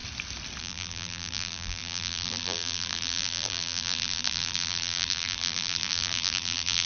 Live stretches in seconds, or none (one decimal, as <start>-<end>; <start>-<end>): 0.0-0.6